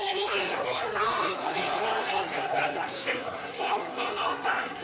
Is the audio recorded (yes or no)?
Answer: no